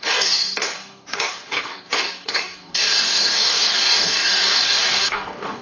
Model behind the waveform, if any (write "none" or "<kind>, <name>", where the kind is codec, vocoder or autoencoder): codec, DAC